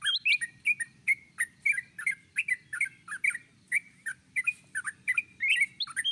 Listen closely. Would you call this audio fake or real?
real